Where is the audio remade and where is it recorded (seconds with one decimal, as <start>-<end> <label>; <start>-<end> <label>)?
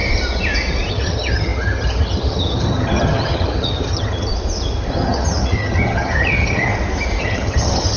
0.0-0.9 recorded; 0.9-4.3 remade; 4.3-4.9 recorded; 4.9-6.7 remade; 6.7-7.2 recorded; 7.2-8.0 remade